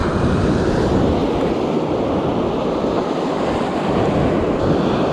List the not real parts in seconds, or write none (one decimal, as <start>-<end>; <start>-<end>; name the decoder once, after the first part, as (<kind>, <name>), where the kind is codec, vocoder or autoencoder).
none